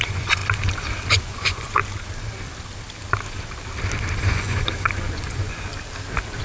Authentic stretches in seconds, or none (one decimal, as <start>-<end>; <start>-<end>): 0.4-1.2; 1.8-4.3; 5.7-6.4